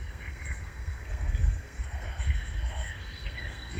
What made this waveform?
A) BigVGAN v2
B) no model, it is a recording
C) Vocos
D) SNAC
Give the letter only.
D